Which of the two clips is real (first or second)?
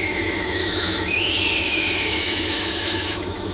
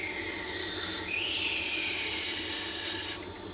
second